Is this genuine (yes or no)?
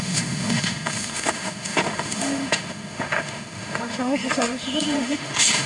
no